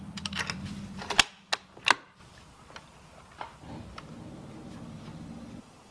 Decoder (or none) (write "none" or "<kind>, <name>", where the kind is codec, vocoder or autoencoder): none